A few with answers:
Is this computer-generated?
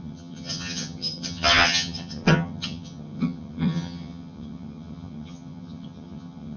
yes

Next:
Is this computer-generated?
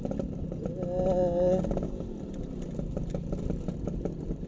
no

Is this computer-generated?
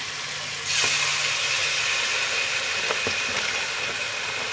no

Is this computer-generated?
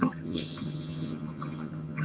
yes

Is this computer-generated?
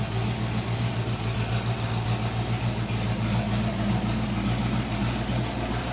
no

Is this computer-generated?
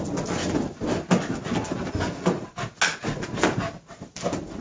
no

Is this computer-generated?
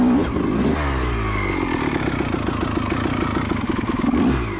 no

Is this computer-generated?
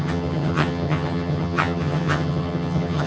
yes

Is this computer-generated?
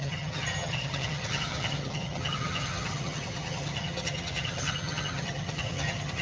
yes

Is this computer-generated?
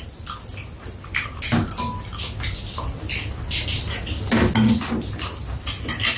no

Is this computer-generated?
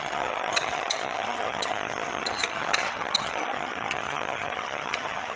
yes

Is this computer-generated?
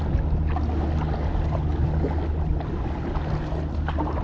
no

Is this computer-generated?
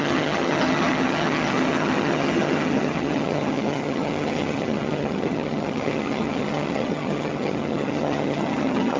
yes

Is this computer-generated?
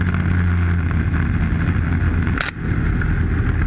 no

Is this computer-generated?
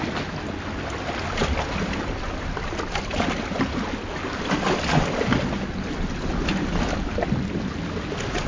no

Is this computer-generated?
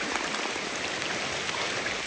no